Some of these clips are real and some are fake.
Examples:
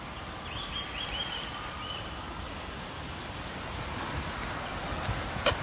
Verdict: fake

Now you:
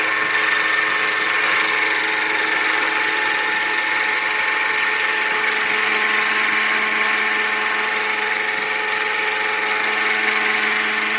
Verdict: real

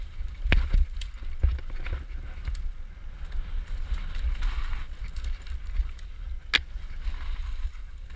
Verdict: real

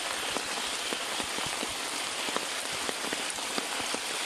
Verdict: fake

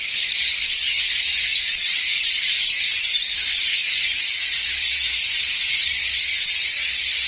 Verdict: fake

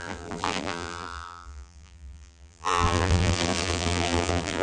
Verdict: fake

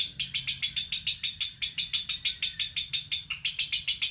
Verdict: real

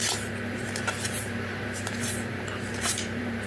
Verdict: fake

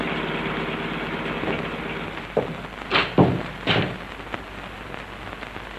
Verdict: real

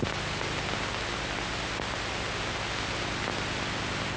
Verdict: real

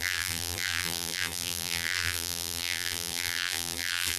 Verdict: fake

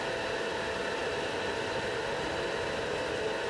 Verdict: real